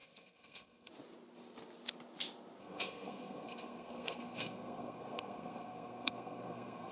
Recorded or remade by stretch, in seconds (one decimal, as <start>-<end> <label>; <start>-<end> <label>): 0.0-0.9 remade; 0.9-2.6 recorded; 2.6-6.9 remade